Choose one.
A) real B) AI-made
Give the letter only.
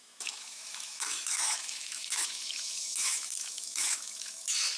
B